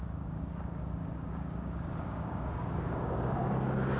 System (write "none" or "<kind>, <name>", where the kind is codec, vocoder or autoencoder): codec, DAC